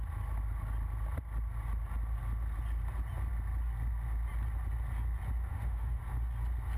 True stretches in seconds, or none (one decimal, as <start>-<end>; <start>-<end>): 0.0-5.5; 6.0-6.8